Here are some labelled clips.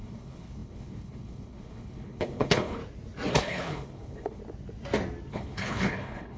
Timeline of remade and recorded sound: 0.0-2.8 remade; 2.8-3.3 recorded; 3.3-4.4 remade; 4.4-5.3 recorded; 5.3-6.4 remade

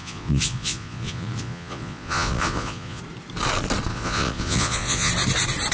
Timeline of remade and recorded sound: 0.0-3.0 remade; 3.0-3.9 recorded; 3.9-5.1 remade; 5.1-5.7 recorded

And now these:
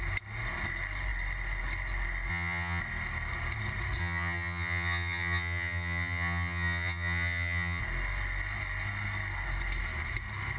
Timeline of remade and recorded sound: 0.0-2.3 recorded; 2.3-2.8 remade; 2.8-4.0 recorded; 4.0-7.8 remade; 7.8-10.6 recorded

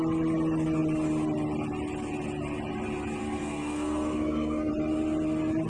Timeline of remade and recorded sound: 0.0-3.2 recorded; 3.2-4.7 remade; 4.7-5.7 recorded

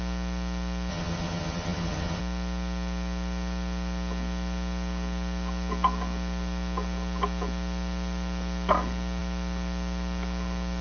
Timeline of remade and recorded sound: 0.0-0.9 recorded; 0.9-2.2 remade; 2.2-10.8 recorded